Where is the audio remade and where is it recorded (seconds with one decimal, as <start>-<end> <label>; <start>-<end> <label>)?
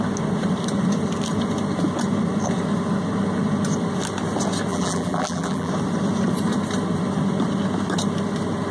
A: 0.0-4.7 recorded; 4.7-5.7 remade; 5.7-8.7 recorded